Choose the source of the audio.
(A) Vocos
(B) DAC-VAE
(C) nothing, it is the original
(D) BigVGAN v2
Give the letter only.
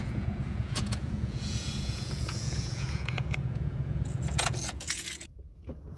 A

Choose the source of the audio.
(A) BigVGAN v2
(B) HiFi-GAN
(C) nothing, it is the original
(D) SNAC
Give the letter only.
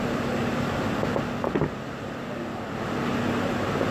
C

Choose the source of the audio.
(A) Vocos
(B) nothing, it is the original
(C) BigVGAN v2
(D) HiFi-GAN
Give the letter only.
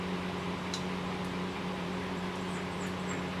C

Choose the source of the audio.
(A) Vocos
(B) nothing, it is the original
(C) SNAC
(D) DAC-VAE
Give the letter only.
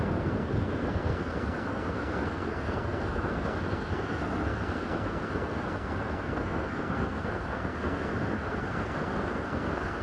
C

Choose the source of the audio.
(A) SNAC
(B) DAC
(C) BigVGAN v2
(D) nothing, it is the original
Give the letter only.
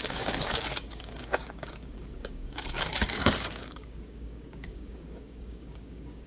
B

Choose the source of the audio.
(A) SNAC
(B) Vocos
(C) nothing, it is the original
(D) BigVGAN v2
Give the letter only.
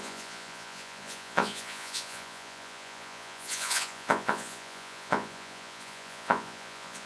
B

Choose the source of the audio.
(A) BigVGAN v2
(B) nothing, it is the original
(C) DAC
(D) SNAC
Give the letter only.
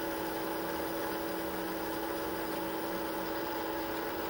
B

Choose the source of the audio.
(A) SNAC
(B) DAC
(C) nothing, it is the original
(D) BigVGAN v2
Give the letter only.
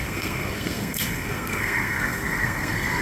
A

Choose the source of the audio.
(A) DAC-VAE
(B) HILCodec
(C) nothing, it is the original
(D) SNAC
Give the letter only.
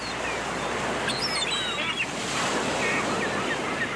C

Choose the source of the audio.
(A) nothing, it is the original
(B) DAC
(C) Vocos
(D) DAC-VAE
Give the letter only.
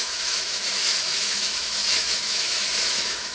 D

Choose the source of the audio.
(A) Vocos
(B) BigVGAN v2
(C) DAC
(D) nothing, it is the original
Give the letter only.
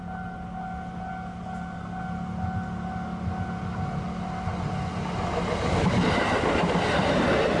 D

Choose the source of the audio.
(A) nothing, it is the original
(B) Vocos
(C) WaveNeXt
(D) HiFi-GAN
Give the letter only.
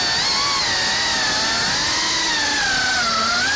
A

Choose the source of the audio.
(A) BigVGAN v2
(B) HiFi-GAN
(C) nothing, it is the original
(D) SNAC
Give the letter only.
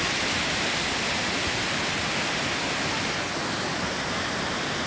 C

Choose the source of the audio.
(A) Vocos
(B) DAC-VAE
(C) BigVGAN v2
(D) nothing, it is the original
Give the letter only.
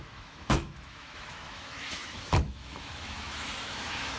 B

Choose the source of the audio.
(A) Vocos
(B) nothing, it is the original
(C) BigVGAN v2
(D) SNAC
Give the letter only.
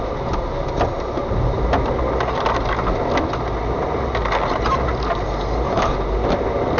B